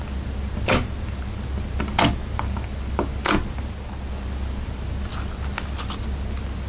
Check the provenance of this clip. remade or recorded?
recorded